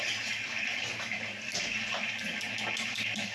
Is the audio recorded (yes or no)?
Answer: yes